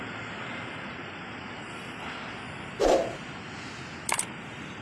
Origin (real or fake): real